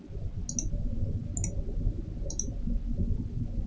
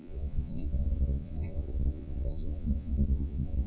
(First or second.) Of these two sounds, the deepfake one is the second